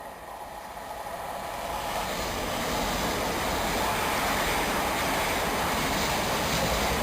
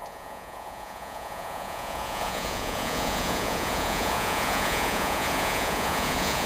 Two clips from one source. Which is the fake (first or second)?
second